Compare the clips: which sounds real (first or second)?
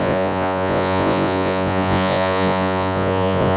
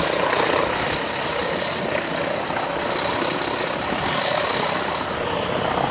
second